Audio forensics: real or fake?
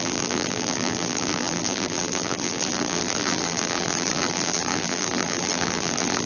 fake